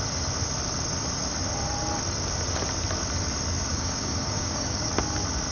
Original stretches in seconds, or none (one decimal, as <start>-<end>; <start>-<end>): 0.0-3.7; 4.9-5.5